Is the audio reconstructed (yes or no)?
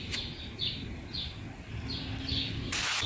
no